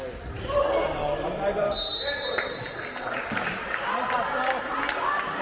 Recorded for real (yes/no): yes